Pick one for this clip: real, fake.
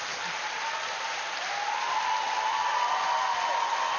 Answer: real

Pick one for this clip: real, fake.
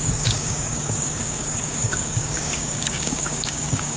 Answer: fake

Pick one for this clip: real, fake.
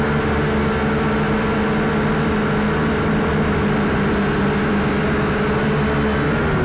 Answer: real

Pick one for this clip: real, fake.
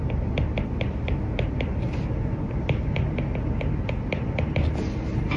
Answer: real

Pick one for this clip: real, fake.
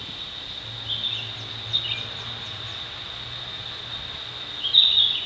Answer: real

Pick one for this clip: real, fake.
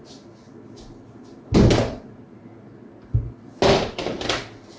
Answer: real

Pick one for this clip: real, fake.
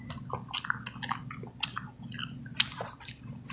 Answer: real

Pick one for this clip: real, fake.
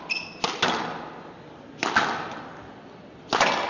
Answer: real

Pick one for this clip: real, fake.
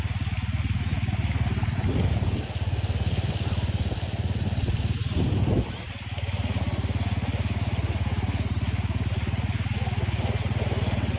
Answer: real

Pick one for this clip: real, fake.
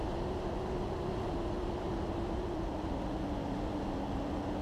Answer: real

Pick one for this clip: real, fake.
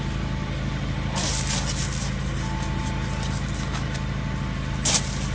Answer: real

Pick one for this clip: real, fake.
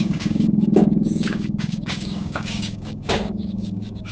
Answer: fake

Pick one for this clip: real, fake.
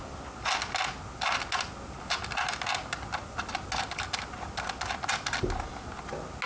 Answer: real